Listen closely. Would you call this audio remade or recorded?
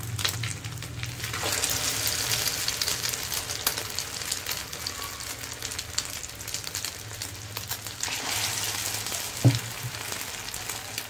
recorded